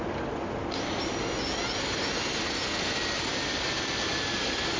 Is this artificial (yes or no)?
no